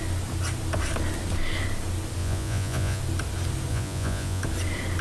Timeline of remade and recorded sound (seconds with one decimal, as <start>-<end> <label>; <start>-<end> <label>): 0.0-2.2 recorded; 2.2-3.0 remade; 3.0-3.7 recorded; 3.7-4.4 remade; 4.4-5.0 recorded